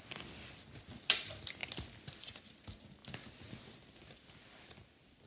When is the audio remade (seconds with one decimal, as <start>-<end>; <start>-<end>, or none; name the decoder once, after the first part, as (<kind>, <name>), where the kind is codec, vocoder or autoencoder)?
none